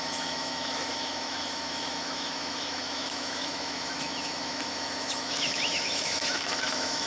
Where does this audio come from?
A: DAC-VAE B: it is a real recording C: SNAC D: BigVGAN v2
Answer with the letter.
A